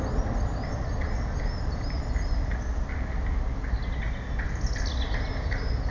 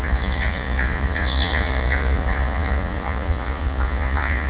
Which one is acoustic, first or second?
first